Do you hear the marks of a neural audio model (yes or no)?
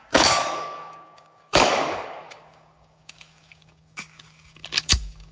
yes